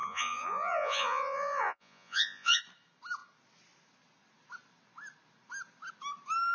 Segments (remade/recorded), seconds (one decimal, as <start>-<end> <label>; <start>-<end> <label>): 0.0-2.6 remade; 2.6-6.5 recorded